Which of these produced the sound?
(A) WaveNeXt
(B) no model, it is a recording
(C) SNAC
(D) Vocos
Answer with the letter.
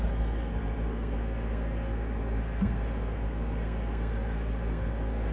C